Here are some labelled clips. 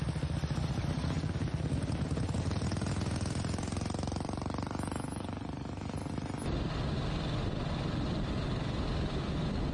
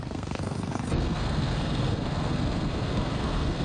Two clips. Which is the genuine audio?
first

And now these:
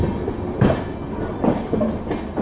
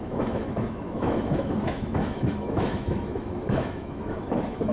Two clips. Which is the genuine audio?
first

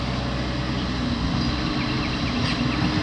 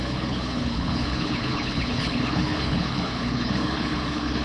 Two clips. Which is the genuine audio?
first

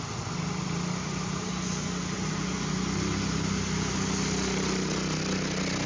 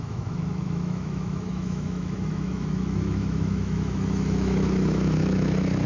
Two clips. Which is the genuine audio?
first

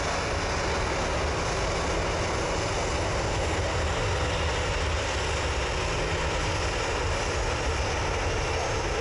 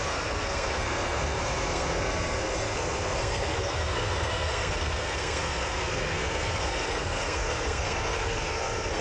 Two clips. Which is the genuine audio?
first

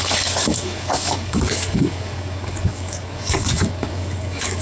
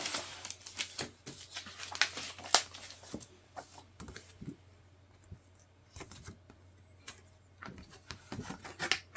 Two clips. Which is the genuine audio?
second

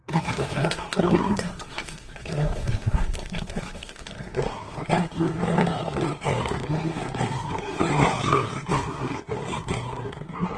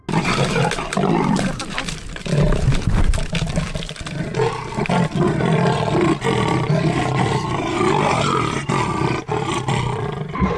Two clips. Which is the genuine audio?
second